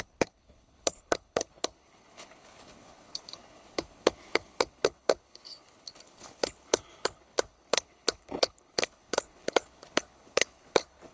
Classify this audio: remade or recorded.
remade